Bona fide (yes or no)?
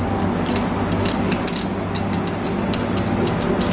yes